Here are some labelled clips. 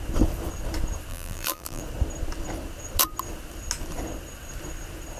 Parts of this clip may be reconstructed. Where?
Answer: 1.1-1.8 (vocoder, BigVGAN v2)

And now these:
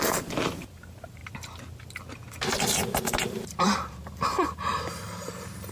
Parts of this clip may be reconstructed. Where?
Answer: 0.0-1.2 (vocoder, BigVGAN v2); 3.2-4.7

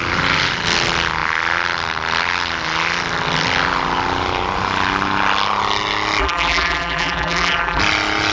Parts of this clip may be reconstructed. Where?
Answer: 6.2-7.8 (vocoder, BigVGAN v2)

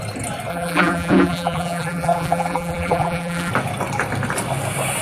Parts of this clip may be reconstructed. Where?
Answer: 0.5-3.5 (vocoder, BigVGAN v2)